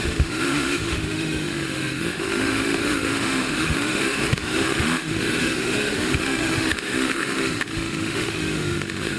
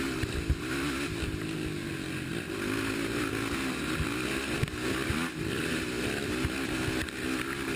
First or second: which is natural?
second